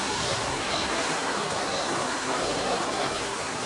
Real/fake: fake